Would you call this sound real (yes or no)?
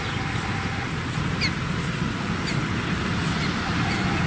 yes